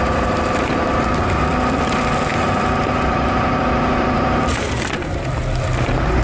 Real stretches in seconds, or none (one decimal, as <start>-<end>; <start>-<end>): none